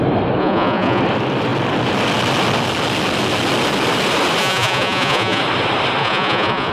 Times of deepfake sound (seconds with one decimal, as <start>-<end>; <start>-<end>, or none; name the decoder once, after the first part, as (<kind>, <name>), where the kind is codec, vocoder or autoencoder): 0.4-1.0 (vocoder, Vocos); 4.4-5.4; 6.0-6.7